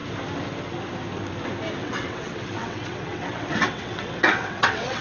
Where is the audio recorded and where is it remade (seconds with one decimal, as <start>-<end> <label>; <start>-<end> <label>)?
0.0-1.8 recorded; 1.8-5.0 remade